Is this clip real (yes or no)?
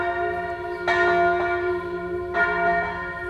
yes